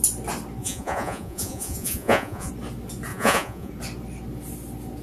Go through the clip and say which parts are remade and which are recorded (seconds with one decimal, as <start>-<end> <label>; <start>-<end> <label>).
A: 0.0-0.6 recorded; 0.6-2.5 remade; 2.5-3.1 recorded; 3.1-3.7 remade; 3.7-5.0 recorded